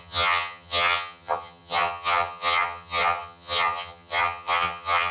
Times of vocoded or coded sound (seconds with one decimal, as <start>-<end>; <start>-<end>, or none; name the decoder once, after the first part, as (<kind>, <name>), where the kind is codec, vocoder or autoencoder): 0.0-5.1 (vocoder, HiFi-GAN)